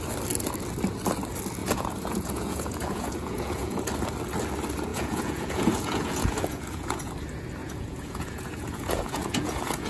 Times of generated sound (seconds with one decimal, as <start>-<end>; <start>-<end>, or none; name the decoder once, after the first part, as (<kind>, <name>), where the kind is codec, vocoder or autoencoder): 1.6-3.8 (vocoder, Vocos); 4.9-7.1; 7.6-9.9